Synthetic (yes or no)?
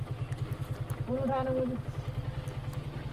no